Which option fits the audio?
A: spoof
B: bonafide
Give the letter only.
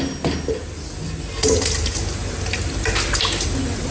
B